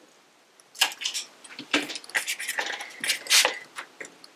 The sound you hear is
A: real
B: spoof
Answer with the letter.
A